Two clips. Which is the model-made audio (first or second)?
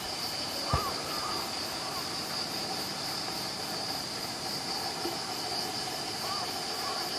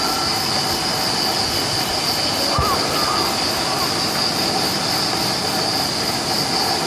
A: first